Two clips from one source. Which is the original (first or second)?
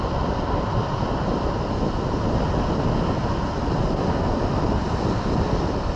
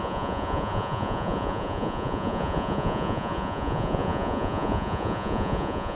first